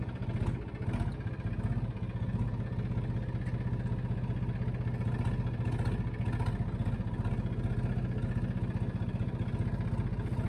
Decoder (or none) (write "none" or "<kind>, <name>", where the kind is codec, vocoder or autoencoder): none